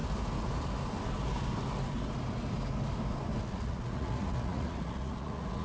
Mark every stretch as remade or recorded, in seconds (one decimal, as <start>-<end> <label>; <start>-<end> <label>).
0.0-3.4 recorded; 3.4-5.6 remade